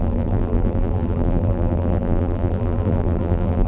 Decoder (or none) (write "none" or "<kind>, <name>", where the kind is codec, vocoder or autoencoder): vocoder, BigVGAN v2